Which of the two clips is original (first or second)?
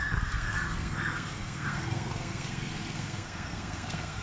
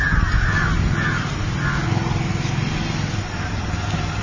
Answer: second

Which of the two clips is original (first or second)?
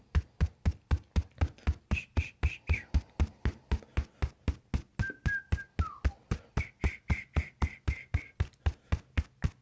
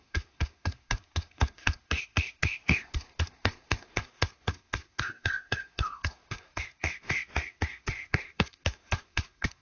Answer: first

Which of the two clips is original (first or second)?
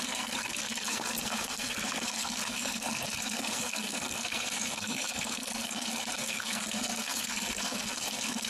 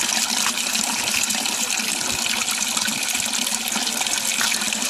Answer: second